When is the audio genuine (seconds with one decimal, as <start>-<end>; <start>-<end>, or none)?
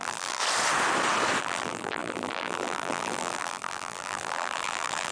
0.4-1.4